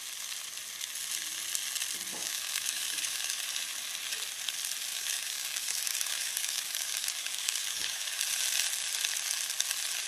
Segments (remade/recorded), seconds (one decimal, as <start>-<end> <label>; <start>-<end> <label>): 0.0-2.1 recorded; 2.1-3.4 remade; 3.4-4.9 recorded; 4.9-8.2 remade; 8.2-10.1 recorded